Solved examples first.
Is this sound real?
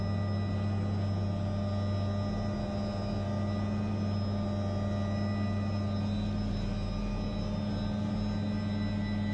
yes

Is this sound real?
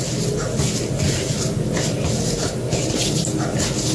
yes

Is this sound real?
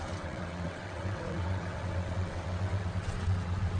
no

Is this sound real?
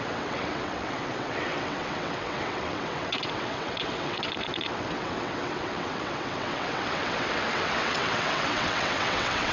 no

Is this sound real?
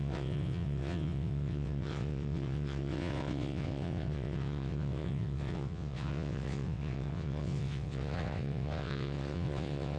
no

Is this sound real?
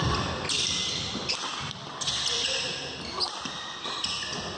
yes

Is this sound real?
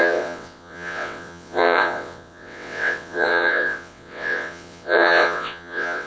no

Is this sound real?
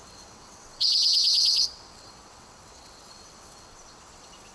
no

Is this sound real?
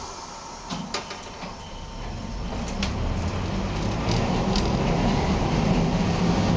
yes